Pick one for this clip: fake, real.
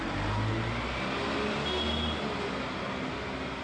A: real